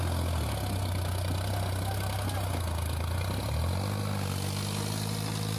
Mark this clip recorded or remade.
recorded